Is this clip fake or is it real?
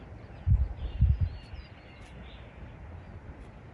real